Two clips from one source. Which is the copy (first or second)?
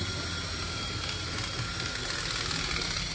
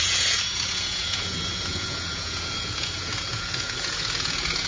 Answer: second